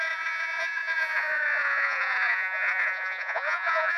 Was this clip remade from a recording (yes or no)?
yes